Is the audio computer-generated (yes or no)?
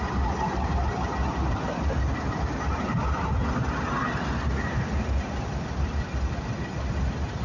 no